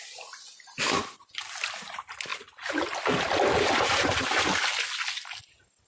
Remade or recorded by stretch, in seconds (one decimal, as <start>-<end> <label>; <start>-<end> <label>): 0.0-5.9 recorded